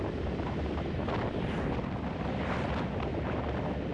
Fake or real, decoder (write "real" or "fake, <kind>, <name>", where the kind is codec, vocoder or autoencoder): fake, vocoder, BigVGAN v2